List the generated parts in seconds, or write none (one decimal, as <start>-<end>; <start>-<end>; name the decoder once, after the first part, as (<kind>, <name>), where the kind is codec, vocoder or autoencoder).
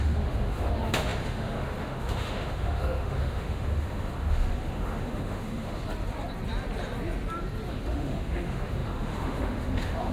0.0-5.8 (autoencoder, DAC-VAE); 7.7-10.1